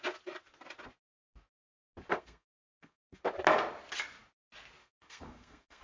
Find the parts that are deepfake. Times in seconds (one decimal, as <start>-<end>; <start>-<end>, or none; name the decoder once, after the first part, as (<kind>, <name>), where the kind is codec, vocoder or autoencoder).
2.1-3.2 (codec, SNAC); 4.8-5.8